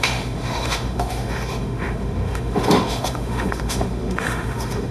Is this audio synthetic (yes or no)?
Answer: yes